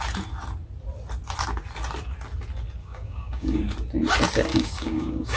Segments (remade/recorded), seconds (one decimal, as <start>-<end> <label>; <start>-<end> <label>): 0.0-2.8 recorded; 2.8-3.6 remade; 3.6-4.5 recorded; 4.5-5.4 remade